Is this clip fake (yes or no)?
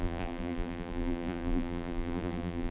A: yes